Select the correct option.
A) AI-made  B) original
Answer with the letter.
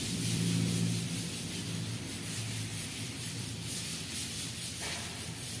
A